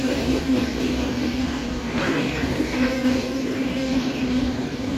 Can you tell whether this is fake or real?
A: fake